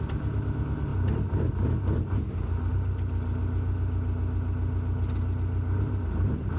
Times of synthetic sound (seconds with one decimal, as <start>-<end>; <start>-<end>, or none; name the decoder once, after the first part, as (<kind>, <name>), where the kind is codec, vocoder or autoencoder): none